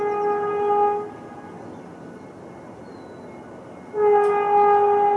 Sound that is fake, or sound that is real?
real